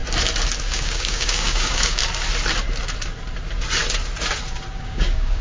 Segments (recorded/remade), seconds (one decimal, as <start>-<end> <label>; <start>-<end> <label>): 0.0-0.6 recorded; 0.6-2.0 remade; 2.0-4.8 recorded; 4.8-5.4 remade